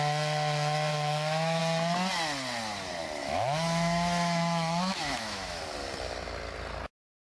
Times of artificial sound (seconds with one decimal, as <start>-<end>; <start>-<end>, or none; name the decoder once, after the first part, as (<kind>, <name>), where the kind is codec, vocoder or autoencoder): 0.9-1.6 (autoencoder, DAC-VAE); 3.2-5.6